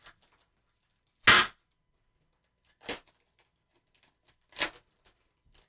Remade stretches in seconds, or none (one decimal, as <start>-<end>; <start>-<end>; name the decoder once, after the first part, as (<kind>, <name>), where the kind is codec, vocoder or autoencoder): none